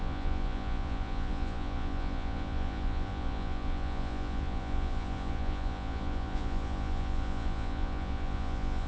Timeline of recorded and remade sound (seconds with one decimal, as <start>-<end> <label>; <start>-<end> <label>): 0.0-8.9 remade